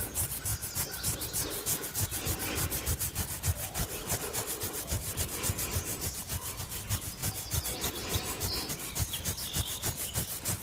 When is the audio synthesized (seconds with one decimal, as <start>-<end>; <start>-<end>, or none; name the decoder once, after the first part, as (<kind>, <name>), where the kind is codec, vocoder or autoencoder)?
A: 5.9-6.6 (vocoder, BigVGAN v2)